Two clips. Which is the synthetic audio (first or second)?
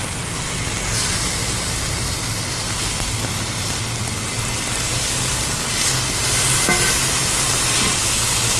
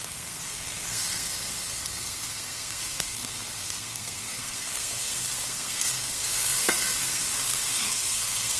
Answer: second